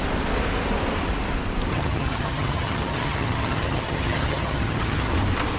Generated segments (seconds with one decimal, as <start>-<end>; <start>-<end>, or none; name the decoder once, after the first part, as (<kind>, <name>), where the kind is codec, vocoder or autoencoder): 1.7-5.1 (vocoder, HiFi-GAN)